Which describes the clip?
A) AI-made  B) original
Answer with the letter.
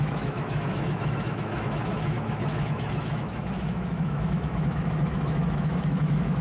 A